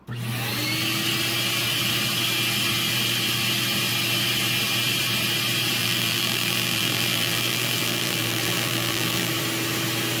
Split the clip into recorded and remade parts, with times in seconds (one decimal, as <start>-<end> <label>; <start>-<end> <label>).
0.0-5.8 recorded; 5.8-9.3 remade; 9.3-10.2 recorded